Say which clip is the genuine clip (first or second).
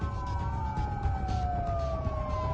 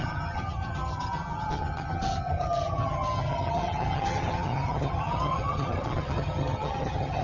first